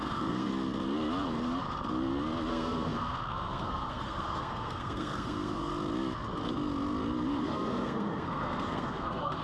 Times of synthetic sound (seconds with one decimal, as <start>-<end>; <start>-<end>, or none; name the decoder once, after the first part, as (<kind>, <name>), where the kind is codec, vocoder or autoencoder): 0.0-0.5 (codec, SNAC); 2.5-5.7; 7.4-9.4